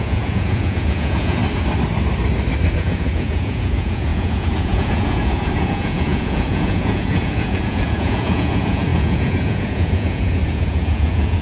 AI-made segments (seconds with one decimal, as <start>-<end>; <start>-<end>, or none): 0.0-1.4; 2.7-11.4